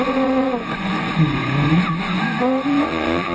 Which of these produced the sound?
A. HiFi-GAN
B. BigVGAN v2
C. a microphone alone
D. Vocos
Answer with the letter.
D